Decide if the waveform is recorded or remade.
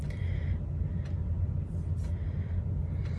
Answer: recorded